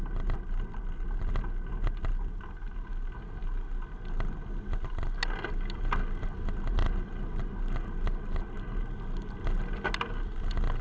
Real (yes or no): yes